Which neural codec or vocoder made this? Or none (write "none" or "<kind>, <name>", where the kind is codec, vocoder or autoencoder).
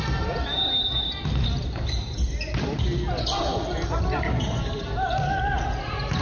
none